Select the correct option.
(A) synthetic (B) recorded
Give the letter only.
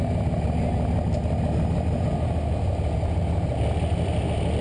B